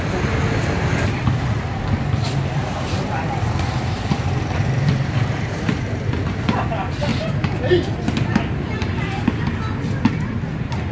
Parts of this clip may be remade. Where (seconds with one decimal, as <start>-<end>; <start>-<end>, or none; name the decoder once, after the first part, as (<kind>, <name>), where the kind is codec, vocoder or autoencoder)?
2.2-6.1 (vocoder, BigVGAN v2)